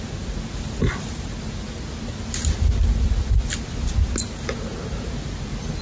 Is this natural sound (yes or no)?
yes